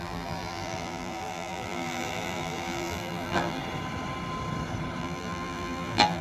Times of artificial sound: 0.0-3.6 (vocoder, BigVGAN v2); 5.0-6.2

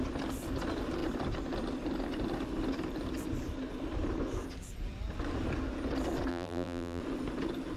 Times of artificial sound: 6.3-7.0 (vocoder, BigVGAN v2)

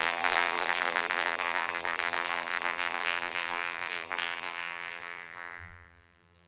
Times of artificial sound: 0.0-6.5 (vocoder, BigVGAN v2)

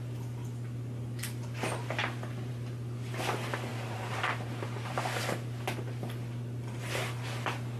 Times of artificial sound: 3.7-5.2 (vocoder, BigVGAN v2)

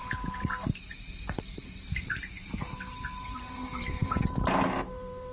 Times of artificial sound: 0.0-5.3 (vocoder, BigVGAN v2)

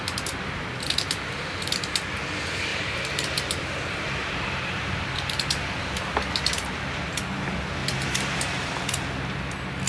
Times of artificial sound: 2.7-5.0 (vocoder, BigVGAN v2); 7.8-8.7